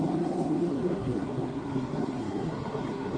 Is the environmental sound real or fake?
fake